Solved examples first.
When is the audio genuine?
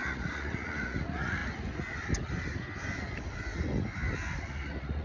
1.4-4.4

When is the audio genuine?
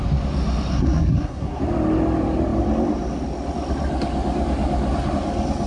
0.0-0.7; 1.6-5.7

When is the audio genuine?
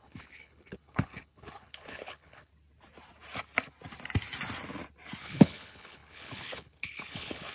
2.5-5.2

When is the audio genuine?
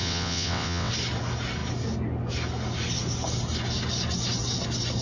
0.9-5.0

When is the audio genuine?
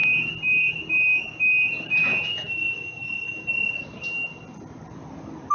0.0-2.0; 3.5-5.5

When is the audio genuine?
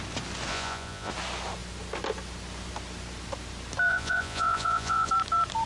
0.0-0.5; 1.1-3.9; 5.1-5.7